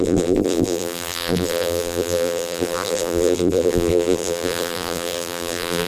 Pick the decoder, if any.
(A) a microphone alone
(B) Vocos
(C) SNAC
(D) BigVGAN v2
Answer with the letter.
D